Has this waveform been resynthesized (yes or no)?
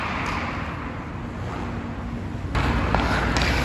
no